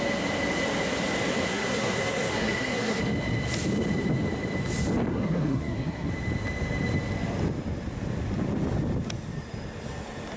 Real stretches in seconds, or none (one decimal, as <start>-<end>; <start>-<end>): 0.0-1.5; 3.0-5.1; 6.1-10.4